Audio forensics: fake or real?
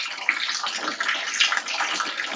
real